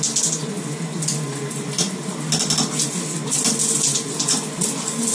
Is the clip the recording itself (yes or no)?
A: yes